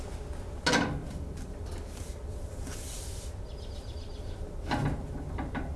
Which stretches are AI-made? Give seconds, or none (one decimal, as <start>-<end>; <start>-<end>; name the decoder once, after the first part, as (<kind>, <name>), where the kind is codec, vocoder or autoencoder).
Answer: 1.0-4.5 (vocoder, BigVGAN v2)

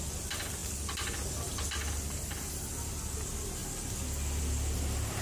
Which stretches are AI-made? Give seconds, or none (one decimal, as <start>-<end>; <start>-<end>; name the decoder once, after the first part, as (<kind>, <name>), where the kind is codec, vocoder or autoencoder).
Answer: none

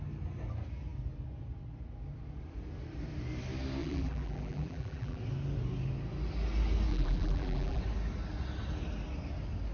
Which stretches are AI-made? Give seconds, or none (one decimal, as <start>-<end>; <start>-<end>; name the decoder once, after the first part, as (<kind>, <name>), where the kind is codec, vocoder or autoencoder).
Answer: 3.8-5.2 (vocoder, BigVGAN v2); 6.9-7.8

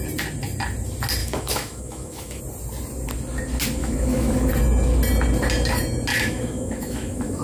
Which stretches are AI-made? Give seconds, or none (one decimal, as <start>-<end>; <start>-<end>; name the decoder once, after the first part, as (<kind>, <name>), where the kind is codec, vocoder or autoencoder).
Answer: 1.2-2.4 (autoencoder, DAC-VAE); 3.8-4.5; 6.1-7.4